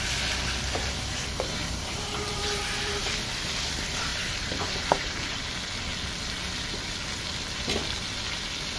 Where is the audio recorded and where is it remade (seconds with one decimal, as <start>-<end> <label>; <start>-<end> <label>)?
0.0-1.6 recorded; 1.6-2.9 remade; 2.9-4.1 recorded; 4.1-5.4 remade; 5.4-8.8 recorded